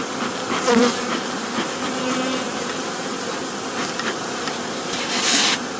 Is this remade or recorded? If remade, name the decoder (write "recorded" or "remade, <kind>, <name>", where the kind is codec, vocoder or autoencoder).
recorded